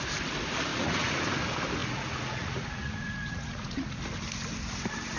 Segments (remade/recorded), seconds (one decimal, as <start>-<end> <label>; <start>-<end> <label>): 0.0-0.7 recorded; 0.7-1.2 remade; 1.2-1.8 recorded; 1.8-4.0 remade; 4.0-5.2 recorded